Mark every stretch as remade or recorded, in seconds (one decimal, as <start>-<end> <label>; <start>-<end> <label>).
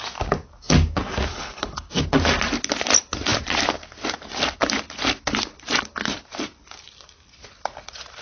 0.0-1.3 recorded; 1.3-2.0 remade; 2.0-8.2 recorded